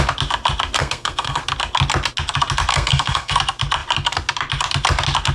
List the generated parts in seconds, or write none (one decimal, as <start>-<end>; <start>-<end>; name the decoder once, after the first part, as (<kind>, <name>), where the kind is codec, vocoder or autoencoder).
0.8-1.4 (codec, SNAC); 2.7-3.4